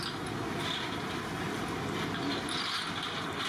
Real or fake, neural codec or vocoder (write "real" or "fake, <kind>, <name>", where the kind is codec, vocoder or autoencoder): real